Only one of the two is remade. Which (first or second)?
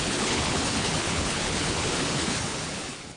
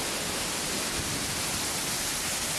first